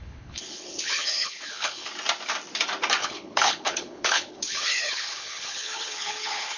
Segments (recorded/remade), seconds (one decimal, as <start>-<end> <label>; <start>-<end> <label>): 0.0-1.9 remade; 1.9-3.0 recorded; 3.0-6.6 remade